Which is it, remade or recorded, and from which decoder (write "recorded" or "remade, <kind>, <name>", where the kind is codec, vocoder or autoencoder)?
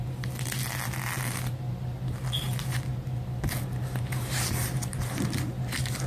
recorded